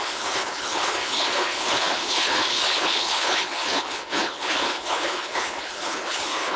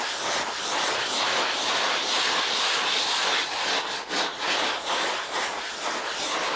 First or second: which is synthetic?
first